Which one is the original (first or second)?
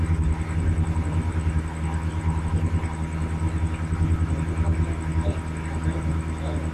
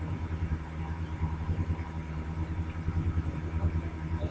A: first